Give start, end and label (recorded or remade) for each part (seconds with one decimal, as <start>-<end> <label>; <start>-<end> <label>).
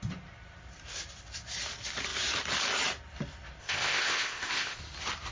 0.0-3.6 recorded; 3.6-4.8 remade; 4.8-5.3 recorded